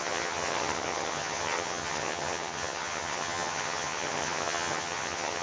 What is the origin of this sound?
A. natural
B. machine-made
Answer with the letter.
B